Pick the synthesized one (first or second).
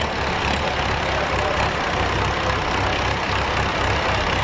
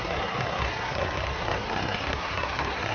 second